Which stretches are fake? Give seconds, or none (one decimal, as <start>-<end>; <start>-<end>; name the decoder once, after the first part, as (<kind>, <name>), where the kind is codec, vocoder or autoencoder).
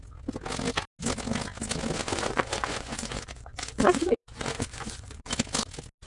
2.0-5.3 (vocoder, Vocos)